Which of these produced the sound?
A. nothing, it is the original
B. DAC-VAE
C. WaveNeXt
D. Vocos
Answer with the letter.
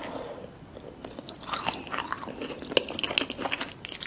A